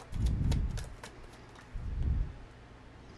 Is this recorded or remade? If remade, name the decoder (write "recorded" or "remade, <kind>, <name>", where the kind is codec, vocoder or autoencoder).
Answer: recorded